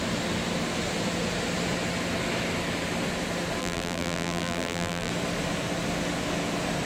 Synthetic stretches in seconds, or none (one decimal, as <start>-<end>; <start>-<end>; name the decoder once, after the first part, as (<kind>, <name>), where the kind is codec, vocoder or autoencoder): 3.6-5.1 (vocoder, BigVGAN v2)